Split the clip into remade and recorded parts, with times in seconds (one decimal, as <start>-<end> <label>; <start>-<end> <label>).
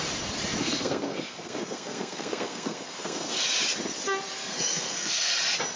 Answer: 0.0-0.6 recorded; 0.6-3.4 remade; 3.4-4.4 recorded; 4.4-5.3 remade; 5.3-5.8 recorded